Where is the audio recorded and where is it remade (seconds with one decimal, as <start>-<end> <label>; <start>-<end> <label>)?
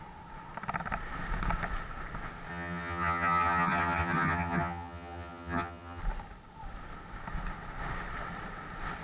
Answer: 0.0-2.5 recorded; 2.5-6.0 remade; 6.0-9.0 recorded